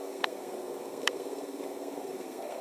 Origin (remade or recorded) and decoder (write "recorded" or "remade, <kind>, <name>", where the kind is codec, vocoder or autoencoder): remade, codec, SNAC